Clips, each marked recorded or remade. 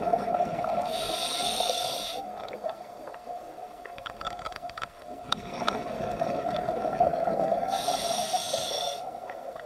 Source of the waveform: remade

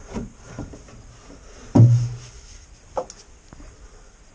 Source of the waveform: recorded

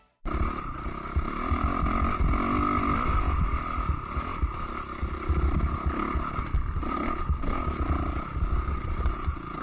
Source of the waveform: recorded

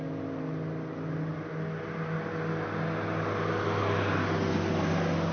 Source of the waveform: recorded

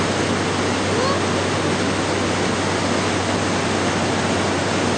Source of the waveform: recorded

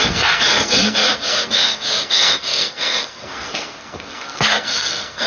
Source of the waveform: remade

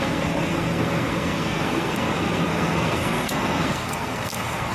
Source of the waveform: remade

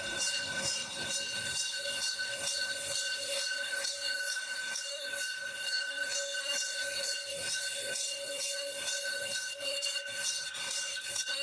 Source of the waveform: remade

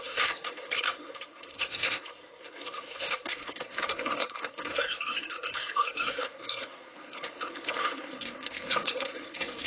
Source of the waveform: remade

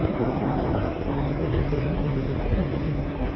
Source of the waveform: remade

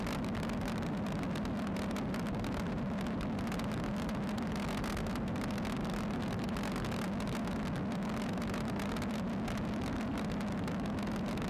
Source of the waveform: recorded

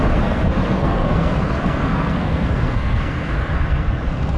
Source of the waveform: remade